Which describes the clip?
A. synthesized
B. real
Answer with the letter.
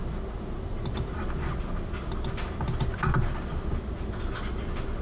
B